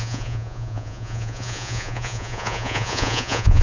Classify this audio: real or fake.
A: fake